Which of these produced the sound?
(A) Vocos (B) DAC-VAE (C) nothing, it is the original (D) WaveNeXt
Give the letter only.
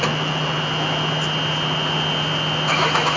C